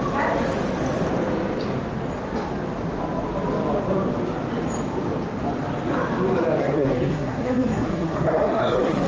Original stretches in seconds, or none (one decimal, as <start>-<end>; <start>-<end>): 0.0-6.6